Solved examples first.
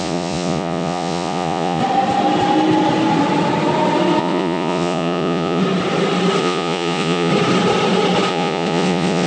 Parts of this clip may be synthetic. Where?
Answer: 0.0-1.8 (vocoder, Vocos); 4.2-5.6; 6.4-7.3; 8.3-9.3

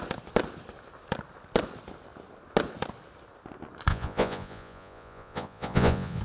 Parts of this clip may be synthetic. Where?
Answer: 3.9-6.2 (vocoder, Vocos)

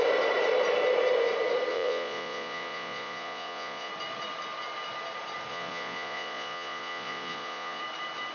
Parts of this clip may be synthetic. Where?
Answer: 1.7-3.9 (vocoder, Vocos); 5.5-7.8

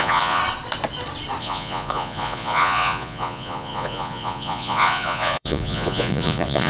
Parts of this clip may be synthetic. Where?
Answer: 0.0-0.4 (vocoder, Vocos); 1.4-6.7